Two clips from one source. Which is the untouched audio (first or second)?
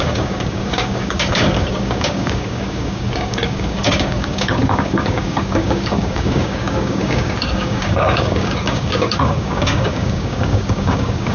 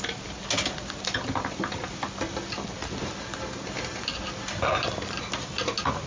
second